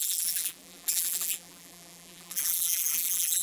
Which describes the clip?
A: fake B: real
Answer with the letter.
A